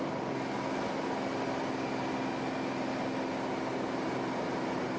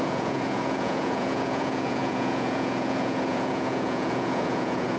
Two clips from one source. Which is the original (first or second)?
first